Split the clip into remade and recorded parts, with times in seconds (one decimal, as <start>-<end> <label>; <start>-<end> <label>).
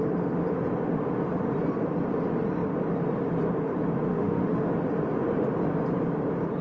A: 0.0-4.1 recorded; 4.1-4.7 remade; 4.7-6.6 recorded